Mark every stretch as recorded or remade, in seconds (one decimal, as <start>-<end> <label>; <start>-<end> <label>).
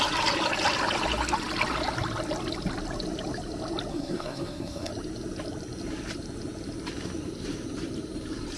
0.0-3.9 recorded; 3.9-4.9 remade; 4.9-8.6 recorded